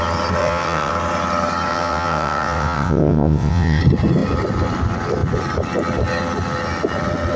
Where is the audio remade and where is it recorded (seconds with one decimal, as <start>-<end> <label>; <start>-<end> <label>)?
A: 0.0-0.4 recorded; 0.4-0.9 remade; 0.9-1.7 recorded; 1.7-3.8 remade; 3.8-7.4 recorded

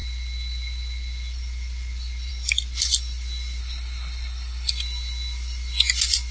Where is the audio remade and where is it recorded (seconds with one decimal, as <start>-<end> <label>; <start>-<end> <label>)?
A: 0.0-3.6 recorded; 3.6-4.7 remade; 4.7-6.3 recorded

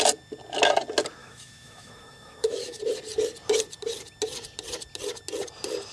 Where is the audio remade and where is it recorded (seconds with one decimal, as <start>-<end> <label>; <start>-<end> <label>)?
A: 0.0-1.2 recorded; 1.2-2.8 remade; 2.8-5.9 recorded

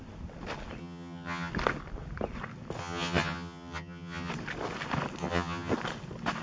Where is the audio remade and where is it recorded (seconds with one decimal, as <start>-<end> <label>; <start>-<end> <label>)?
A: 0.0-0.8 recorded; 0.8-1.5 remade; 1.5-2.8 recorded; 2.8-4.3 remade; 4.3-5.2 recorded; 5.2-5.7 remade; 5.7-6.4 recorded

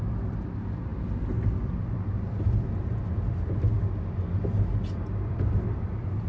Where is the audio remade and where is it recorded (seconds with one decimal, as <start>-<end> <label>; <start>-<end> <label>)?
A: 0.0-6.3 recorded

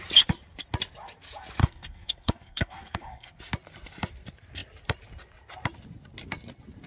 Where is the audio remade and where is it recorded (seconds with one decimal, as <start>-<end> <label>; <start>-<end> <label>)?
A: 0.0-1.6 recorded; 1.6-3.4 remade; 3.4-6.9 recorded

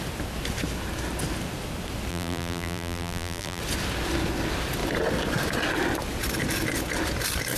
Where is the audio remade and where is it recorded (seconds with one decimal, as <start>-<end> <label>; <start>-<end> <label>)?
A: 0.0-2.1 recorded; 2.1-3.6 remade; 3.6-7.6 recorded